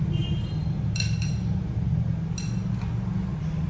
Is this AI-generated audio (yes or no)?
no